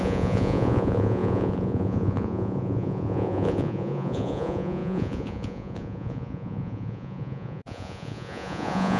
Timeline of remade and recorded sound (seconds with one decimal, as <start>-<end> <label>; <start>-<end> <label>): 0.0-9.0 remade